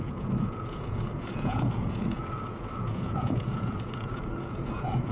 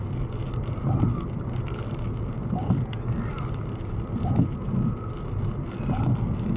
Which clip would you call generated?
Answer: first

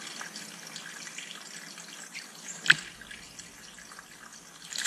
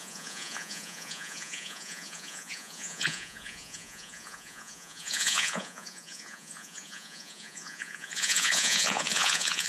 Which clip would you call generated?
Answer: second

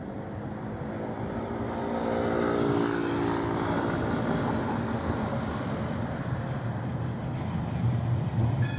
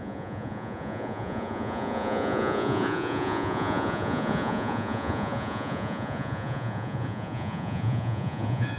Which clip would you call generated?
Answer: second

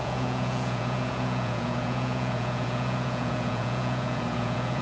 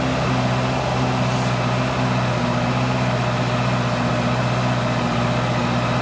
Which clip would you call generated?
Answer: first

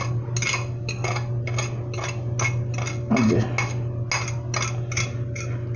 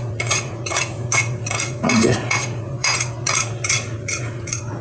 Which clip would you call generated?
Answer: second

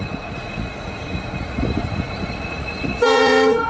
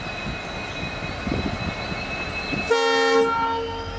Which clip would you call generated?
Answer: first